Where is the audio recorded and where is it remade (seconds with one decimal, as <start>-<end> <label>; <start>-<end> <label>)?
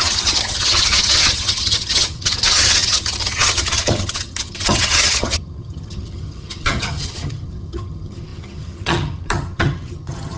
0.0-10.4 remade